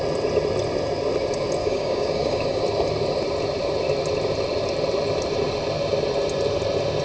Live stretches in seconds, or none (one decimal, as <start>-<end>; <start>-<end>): 0.0-1.6; 2.6-7.0